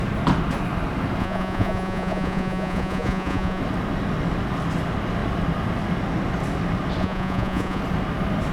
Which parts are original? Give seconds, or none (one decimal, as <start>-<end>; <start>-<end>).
0.0-1.2; 3.6-7.0; 7.8-8.5